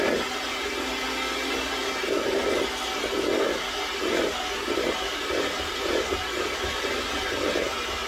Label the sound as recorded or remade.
recorded